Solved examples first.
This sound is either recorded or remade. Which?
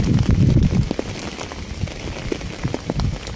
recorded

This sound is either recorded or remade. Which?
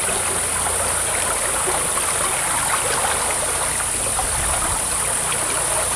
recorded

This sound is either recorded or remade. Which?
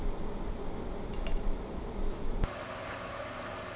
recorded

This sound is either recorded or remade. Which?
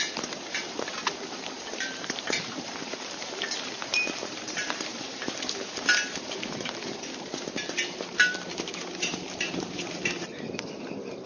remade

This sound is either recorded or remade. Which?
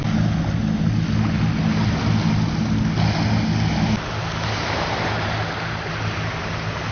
recorded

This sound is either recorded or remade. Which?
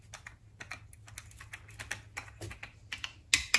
recorded